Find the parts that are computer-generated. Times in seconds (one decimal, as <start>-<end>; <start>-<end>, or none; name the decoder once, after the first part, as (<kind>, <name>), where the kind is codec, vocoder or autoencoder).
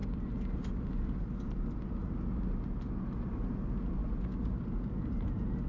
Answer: none